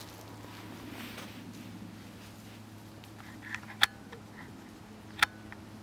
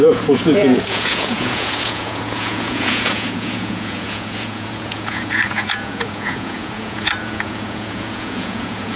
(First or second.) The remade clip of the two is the second